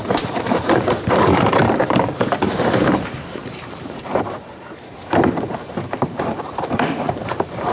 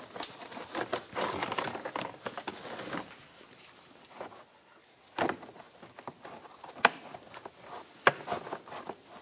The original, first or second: second